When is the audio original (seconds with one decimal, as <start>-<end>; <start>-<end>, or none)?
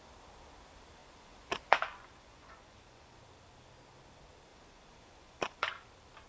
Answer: 0.0-1.0; 3.2-4.5; 5.7-6.3